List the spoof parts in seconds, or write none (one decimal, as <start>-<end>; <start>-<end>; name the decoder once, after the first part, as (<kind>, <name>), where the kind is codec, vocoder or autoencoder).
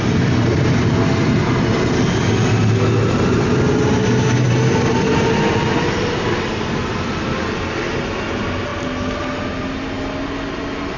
none